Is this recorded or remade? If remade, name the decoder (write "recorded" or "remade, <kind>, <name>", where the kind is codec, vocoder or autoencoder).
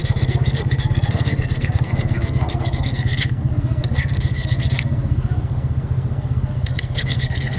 remade, codec, SNAC